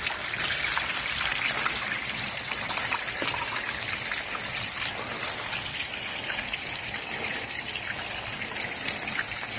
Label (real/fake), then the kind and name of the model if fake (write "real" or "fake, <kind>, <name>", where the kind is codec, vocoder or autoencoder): real